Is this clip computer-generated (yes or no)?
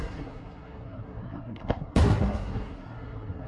yes